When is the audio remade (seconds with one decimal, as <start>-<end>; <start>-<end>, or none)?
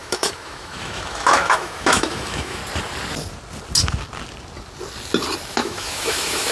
0.0-2.6; 5.5-6.5